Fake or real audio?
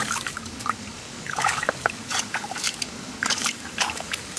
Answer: fake